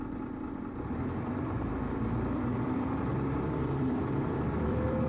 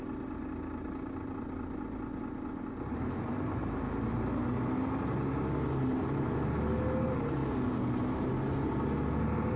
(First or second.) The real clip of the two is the second